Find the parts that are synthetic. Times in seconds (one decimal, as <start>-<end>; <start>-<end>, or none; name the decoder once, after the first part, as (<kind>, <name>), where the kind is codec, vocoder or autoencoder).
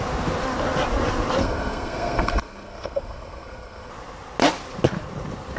1.4-3.9 (codec, SNAC)